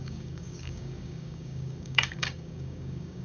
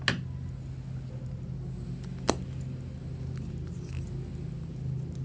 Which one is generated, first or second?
first